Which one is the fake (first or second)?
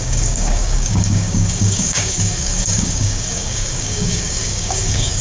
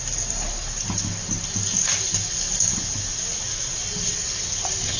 first